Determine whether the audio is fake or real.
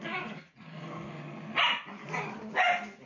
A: real